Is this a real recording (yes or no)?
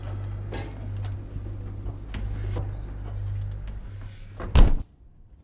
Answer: yes